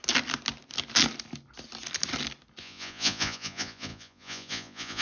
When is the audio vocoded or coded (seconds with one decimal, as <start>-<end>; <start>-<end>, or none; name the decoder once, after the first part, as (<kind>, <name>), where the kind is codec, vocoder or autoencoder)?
2.6-5.0 (vocoder, Vocos)